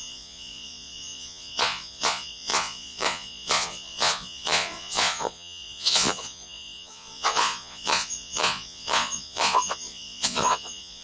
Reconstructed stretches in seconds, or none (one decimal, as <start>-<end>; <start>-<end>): 0.0-11.0